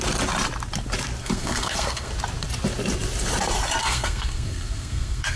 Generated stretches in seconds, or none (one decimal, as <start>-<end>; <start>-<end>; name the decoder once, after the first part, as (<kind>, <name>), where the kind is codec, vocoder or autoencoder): 1.2-2.1 (codec, SNAC); 3.8-5.4